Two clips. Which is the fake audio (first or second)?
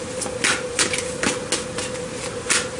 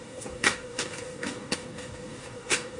second